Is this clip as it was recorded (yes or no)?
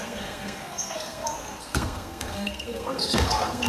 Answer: no